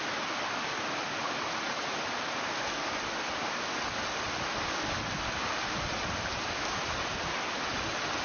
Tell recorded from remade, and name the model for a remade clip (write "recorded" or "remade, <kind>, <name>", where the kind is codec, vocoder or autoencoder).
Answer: recorded